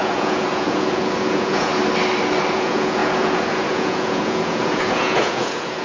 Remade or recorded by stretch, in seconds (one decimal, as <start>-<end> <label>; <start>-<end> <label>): 0.0-1.7 remade; 1.7-2.5 recorded; 2.5-5.8 remade